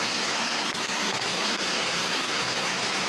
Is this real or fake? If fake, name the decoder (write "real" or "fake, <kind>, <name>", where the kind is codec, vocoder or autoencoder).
fake, codec, SNAC